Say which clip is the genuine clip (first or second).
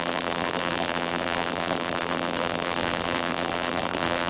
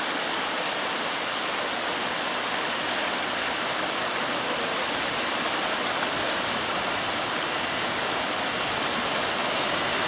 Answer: second